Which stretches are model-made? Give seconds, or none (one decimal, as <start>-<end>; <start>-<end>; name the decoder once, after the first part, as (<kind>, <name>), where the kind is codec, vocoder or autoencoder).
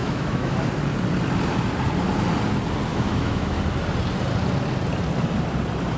0.0-0.6 (autoencoder, DAC-VAE); 2.9-3.6